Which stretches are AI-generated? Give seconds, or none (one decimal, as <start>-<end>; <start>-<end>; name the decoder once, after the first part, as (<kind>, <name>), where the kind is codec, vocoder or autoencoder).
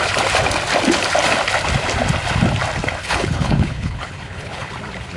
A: 3.0-4.7 (codec, HILCodec)